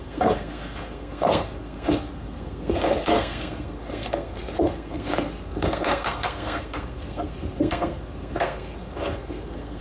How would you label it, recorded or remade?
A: remade